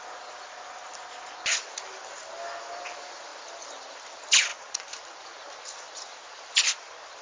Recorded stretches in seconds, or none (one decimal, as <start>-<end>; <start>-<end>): 0.0-7.2